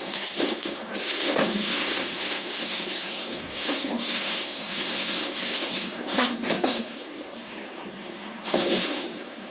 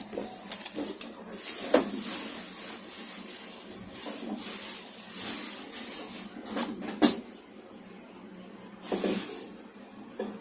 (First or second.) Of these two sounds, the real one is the second